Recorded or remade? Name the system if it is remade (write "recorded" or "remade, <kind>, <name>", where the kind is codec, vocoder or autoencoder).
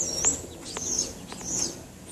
recorded